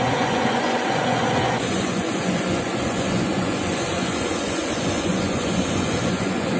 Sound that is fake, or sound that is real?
fake